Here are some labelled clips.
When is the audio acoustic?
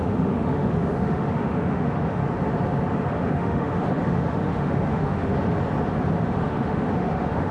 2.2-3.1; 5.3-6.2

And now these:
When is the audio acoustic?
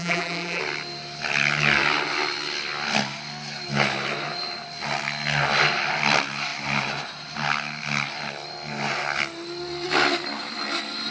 0.6-11.1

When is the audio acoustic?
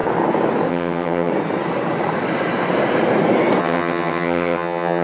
0.0-0.7; 1.3-3.6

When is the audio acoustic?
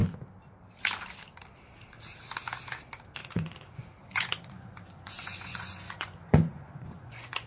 0.0-3.2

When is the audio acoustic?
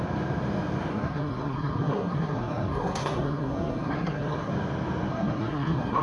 0.0-0.9; 4.5-5.1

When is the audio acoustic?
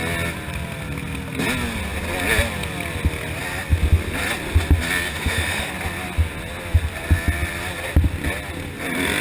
0.0-5.1; 5.7-9.2